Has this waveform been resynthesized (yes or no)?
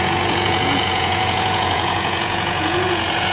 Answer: yes